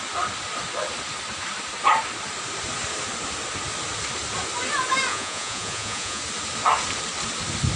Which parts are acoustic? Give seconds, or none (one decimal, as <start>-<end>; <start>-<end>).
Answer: 0.0-5.1; 6.2-7.8

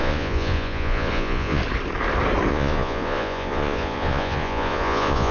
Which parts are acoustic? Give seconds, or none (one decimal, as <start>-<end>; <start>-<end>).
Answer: 1.6-2.5

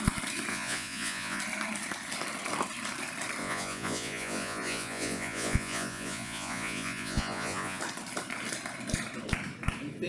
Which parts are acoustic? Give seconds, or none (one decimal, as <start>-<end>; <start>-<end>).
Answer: 0.0-0.5; 1.4-3.4; 7.8-10.1